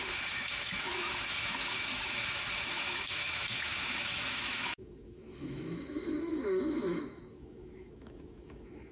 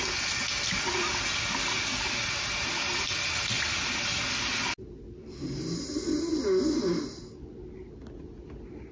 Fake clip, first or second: first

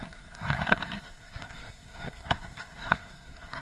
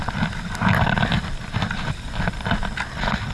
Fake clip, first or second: first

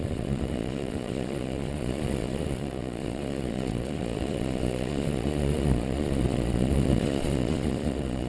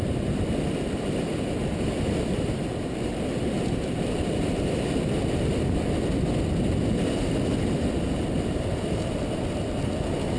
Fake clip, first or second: first